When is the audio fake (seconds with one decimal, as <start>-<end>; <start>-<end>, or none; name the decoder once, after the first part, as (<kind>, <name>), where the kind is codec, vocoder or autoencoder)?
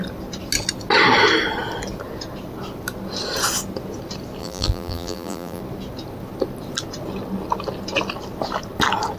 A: 4.4-5.6 (vocoder, BigVGAN v2)